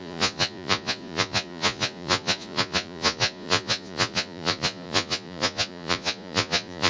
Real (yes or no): no